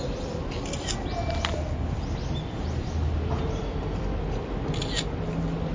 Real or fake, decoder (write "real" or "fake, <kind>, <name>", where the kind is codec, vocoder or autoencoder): real